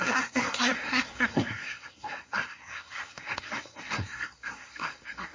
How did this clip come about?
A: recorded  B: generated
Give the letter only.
B